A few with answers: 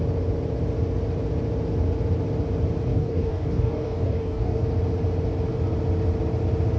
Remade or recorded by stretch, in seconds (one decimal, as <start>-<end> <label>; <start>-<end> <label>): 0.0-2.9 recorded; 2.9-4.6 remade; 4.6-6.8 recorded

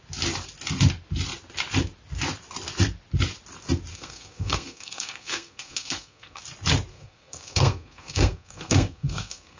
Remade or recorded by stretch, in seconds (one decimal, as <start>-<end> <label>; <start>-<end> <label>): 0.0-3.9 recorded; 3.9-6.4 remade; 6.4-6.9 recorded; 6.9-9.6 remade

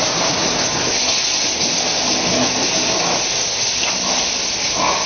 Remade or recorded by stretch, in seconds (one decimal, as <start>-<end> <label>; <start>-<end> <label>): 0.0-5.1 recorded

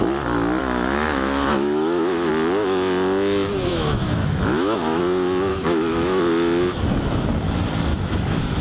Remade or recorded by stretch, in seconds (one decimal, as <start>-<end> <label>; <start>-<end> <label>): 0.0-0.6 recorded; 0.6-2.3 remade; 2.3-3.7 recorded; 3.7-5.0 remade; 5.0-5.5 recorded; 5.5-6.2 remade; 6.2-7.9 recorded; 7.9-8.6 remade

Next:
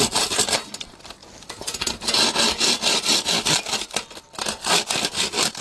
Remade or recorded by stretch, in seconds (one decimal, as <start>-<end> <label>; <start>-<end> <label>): 0.0-5.6 recorded

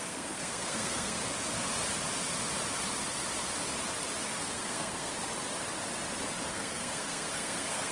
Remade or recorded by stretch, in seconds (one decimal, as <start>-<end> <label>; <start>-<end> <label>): 0.0-1.2 remade; 1.2-4.4 recorded; 4.4-5.1 remade; 5.1-6.5 recorded; 6.5-7.9 remade